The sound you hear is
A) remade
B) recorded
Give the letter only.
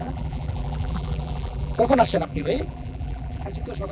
A